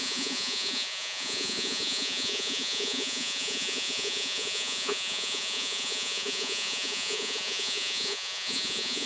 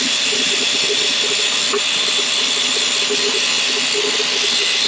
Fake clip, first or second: first